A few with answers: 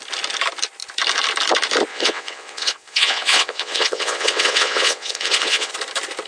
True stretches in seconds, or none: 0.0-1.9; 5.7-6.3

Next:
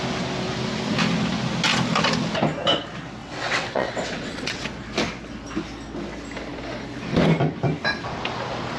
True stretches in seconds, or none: 0.0-3.2; 4.6-8.8

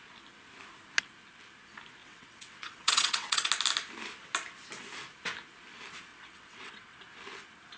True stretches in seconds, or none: 0.0-2.0; 3.5-6.1; 7.0-7.8

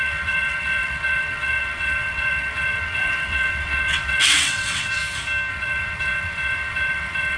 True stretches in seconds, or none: 5.0-5.5

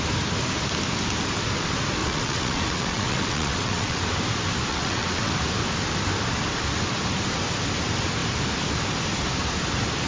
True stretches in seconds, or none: 0.0-2.0; 4.0-4.7; 5.3-10.1